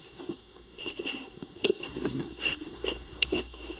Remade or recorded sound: remade